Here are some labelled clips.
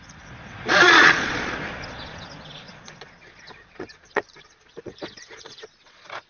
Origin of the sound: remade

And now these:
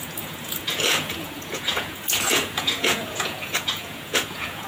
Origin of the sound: remade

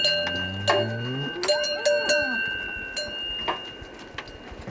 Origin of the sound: recorded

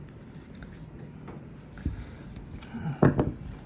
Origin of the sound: recorded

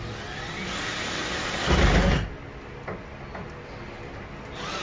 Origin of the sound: recorded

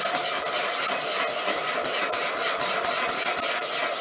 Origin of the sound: recorded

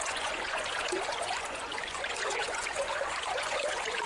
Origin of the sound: remade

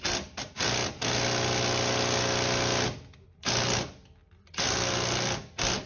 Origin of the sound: recorded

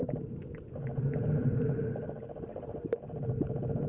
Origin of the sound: recorded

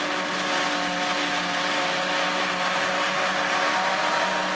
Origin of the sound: recorded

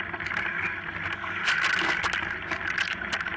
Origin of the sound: recorded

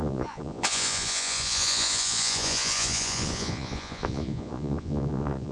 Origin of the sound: remade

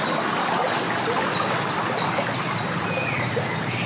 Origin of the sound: recorded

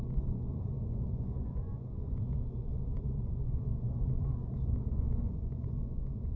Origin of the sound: remade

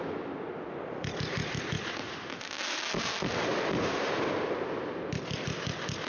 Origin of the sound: recorded